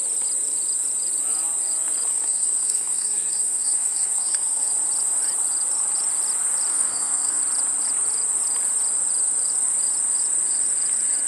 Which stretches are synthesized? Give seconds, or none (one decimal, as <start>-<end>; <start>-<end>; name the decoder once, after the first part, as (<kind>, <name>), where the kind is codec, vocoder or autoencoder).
2.1-4.7 (codec, SNAC); 6.7-7.4

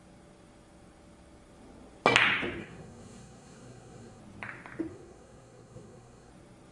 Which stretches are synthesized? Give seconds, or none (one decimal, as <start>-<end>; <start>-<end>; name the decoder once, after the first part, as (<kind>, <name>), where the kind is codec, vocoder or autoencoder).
2.6-4.2 (codec, SNAC); 4.9-6.3

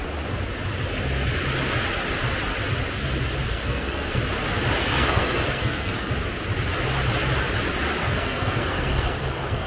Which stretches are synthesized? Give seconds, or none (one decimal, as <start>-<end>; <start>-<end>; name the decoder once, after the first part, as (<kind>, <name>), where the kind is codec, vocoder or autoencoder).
3.5-4.2 (codec, SNAC); 4.8-6.1; 8.0-9.7

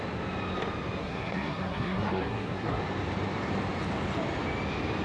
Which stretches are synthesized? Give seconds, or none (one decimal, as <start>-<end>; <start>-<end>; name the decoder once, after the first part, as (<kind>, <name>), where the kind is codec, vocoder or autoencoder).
1.0-2.8 (codec, SNAC)

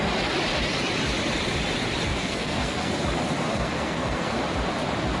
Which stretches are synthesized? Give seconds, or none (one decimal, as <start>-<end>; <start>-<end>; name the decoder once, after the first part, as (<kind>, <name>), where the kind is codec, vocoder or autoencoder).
2.1-2.9 (codec, SNAC); 3.5-4.4